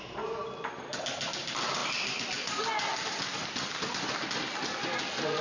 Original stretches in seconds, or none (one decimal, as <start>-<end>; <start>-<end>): 0.0-5.4